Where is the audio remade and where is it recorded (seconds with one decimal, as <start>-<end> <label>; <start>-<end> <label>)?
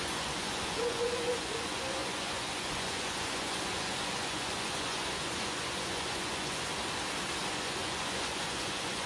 0.0-6.7 remade; 6.7-7.5 recorded; 7.5-9.1 remade